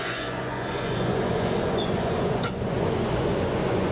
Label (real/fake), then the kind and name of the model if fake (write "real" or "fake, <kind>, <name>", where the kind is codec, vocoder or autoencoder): fake, vocoder, Vocos